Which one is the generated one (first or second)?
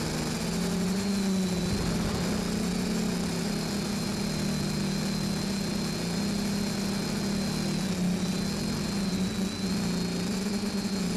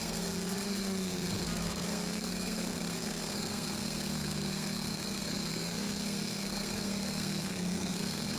second